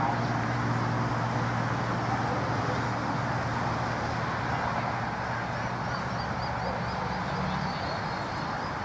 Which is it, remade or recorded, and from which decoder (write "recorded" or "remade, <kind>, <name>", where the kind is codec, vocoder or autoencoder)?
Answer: recorded